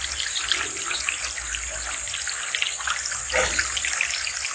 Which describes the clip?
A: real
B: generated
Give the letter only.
A